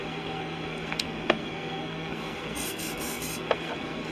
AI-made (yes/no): yes